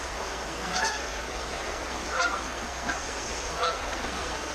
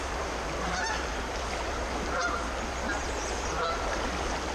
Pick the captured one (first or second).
second